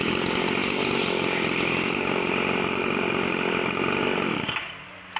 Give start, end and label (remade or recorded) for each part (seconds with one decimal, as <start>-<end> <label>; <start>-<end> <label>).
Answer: 0.0-5.2 recorded